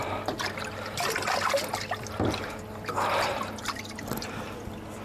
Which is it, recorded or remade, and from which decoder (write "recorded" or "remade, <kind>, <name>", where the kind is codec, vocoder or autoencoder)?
recorded